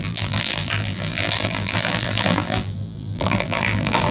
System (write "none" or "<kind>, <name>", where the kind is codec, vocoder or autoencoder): vocoder, BigVGAN v2